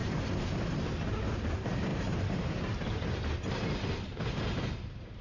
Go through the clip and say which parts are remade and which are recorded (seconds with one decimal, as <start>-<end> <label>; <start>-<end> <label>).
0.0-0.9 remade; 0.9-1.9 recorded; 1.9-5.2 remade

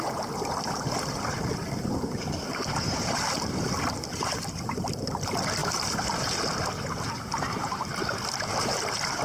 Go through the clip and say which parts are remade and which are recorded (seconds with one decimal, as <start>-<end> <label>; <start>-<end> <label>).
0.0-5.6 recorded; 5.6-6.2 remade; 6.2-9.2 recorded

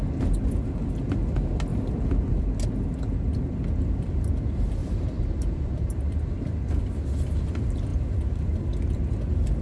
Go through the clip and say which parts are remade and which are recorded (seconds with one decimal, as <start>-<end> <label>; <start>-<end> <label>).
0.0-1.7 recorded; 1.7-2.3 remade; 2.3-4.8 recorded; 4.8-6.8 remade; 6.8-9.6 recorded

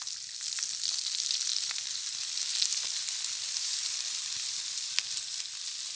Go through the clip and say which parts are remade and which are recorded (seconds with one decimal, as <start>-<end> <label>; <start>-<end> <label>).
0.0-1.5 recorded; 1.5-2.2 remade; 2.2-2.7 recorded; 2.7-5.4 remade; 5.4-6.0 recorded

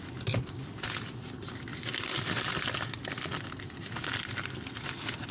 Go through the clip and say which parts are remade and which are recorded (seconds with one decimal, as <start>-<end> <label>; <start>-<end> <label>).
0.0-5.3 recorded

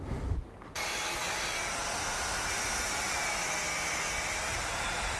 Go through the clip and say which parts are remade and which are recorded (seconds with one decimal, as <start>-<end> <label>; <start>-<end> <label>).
0.0-5.2 recorded

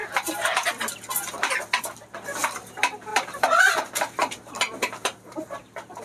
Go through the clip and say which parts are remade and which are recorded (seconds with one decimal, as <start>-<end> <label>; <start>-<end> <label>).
0.0-0.7 remade; 0.7-3.1 recorded; 3.1-6.0 remade

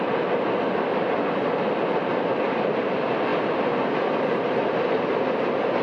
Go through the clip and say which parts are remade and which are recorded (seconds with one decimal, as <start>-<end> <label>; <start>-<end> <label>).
0.0-5.8 recorded